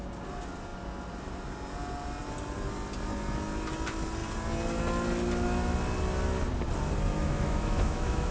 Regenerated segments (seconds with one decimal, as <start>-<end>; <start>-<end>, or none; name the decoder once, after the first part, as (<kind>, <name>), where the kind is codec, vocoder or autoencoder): 7.1-8.3 (autoencoder, DAC-VAE)

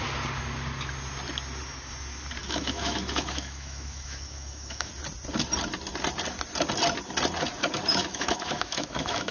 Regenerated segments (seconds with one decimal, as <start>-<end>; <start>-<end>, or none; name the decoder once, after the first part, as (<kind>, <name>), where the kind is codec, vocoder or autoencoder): 2.4-4.9 (autoencoder, DAC-VAE); 7.9-9.3

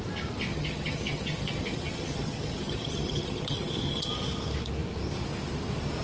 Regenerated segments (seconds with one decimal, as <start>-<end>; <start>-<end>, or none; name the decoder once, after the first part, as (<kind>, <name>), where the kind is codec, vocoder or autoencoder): 0.5-4.1 (vocoder, HiFi-GAN)

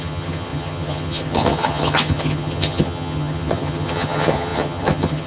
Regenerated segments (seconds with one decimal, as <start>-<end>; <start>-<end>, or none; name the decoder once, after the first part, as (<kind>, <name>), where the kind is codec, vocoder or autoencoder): 0.0-5.3 (vocoder, HiFi-GAN)

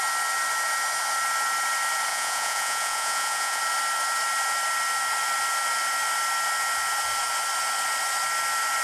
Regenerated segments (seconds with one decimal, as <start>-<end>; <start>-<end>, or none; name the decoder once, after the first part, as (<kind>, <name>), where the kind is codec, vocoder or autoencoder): 2.1-3.6 (vocoder, Vocos)

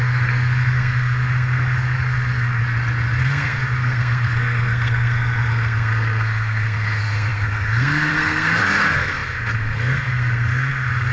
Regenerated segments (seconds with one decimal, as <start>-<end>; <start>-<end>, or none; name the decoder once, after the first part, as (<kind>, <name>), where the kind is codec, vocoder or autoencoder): 0.0-2.6 (codec, SNAC); 3.2-11.1

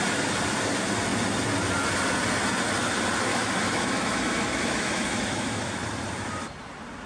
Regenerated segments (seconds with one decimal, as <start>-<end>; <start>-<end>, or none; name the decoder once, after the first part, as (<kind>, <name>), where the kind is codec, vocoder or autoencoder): 3.3-5.7 (autoencoder, DAC-VAE)

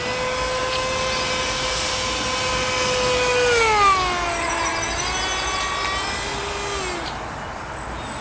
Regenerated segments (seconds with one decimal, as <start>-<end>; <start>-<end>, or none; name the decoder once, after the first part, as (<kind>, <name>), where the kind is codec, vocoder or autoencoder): none